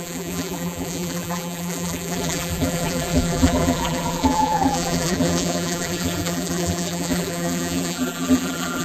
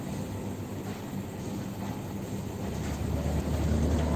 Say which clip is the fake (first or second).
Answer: first